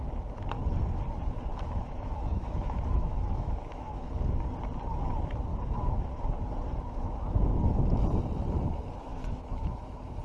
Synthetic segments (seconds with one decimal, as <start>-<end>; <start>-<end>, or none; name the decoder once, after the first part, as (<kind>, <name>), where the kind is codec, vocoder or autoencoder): 1.5-4.1 (autoencoder, DAC-VAE); 5.5-6.2; 9.1-10.2